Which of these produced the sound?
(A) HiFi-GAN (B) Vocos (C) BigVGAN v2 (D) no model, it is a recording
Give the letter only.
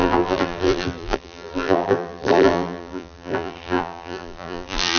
C